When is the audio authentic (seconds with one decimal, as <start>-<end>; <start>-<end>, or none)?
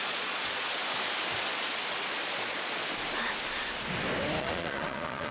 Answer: 0.8-2.3; 2.8-4.4